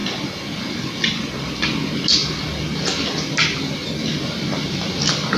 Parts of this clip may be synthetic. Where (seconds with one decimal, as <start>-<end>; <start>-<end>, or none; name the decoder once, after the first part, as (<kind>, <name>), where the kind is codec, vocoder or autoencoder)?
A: none